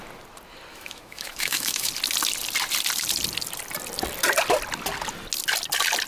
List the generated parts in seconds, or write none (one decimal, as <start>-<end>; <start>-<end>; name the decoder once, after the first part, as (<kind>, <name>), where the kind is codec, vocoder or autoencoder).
0.7-1.9 (autoencoder, DAC-VAE)